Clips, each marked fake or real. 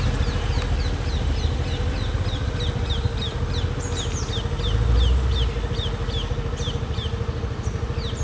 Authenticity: real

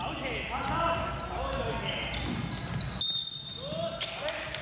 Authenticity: real